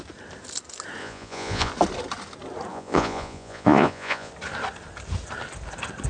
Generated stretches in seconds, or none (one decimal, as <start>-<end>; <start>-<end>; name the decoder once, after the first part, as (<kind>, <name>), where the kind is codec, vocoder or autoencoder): 1.0-1.7 (vocoder, Vocos); 2.7-4.3